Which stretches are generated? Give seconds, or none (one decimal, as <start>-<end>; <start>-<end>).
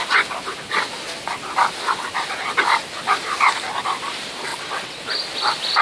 4.5-5.0